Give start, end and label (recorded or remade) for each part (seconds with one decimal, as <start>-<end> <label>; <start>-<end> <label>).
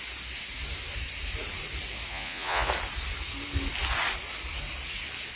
0.0-2.1 recorded; 2.1-2.7 remade; 2.7-5.4 recorded